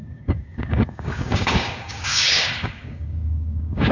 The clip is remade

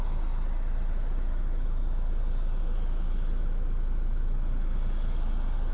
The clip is recorded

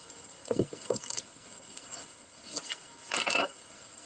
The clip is remade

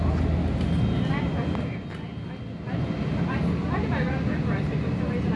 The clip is recorded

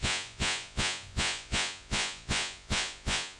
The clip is remade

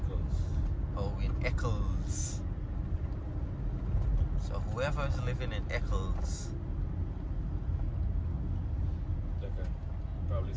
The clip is recorded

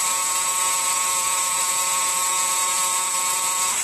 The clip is remade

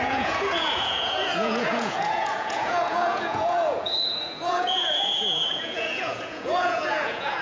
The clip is remade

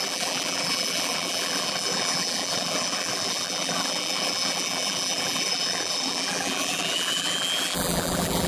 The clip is remade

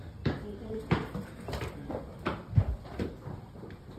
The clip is remade